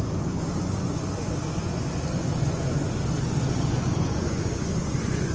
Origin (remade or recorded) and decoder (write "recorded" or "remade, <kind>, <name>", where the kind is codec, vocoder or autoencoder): remade, vocoder, Vocos